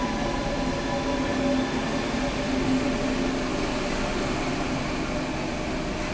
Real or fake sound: real